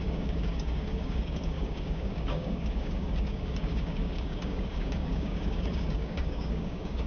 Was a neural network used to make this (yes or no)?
yes